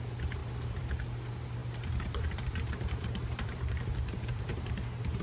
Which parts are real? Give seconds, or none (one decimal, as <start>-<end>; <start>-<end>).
0.0-0.4; 0.9-1.6; 4.7-5.2